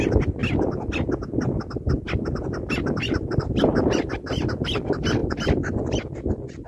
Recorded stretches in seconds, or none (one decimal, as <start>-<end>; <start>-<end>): 0.4-3.9; 5.2-6.7